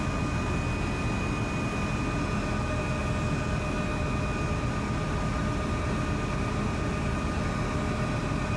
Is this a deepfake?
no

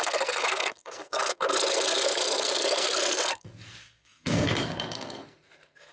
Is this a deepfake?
yes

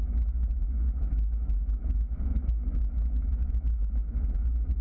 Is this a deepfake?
yes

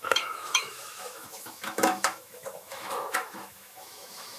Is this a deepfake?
yes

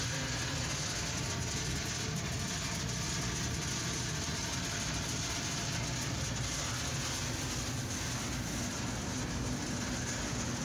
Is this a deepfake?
no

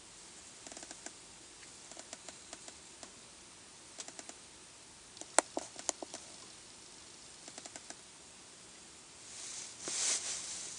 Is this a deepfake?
no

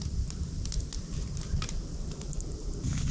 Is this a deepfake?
yes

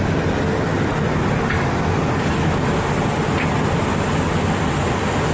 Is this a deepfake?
no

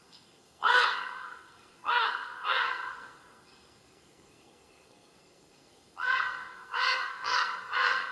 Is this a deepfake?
yes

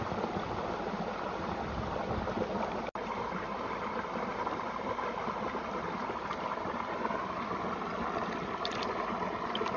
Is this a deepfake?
no